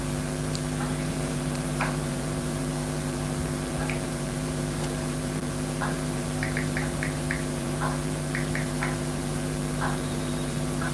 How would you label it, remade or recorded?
remade